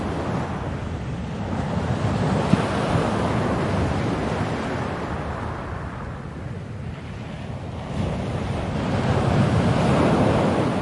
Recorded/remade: recorded